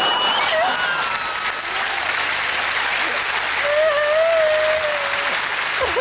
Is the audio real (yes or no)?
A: yes